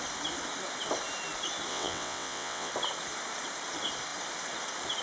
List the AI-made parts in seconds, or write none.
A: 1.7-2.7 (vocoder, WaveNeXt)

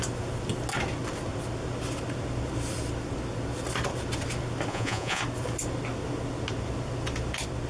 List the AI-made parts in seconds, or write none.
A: 4.7-5.2 (vocoder, Vocos)